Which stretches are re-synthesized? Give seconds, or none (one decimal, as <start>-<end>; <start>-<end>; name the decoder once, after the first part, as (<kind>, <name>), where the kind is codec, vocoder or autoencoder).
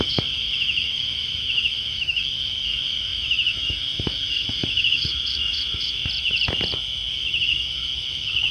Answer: 0.0-6.0 (autoencoder, DAC-VAE); 7.1-8.5